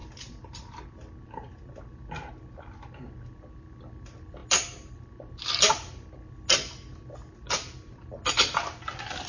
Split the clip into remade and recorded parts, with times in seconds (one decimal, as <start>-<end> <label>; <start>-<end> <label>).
0.0-9.3 recorded